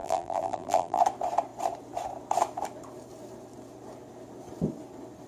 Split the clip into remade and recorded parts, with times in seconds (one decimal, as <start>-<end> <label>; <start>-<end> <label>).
0.0-1.0 remade; 1.0-5.3 recorded